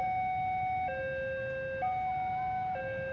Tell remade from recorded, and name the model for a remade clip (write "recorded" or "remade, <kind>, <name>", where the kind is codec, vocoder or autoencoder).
recorded